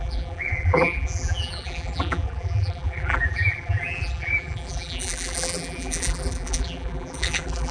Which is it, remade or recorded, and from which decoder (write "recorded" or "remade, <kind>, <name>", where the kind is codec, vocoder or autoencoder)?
remade, vocoder, BigVGAN v2